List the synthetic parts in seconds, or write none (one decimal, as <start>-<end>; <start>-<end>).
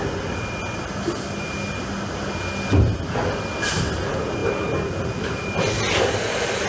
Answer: none